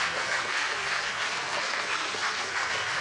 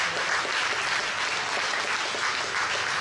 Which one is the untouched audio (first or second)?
second